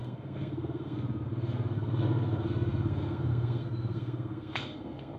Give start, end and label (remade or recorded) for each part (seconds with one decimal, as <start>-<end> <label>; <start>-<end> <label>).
0.0-5.2 remade